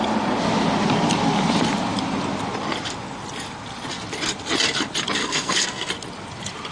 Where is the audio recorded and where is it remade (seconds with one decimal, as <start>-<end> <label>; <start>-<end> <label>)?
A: 0.0-5.2 recorded; 5.2-5.9 remade; 5.9-6.7 recorded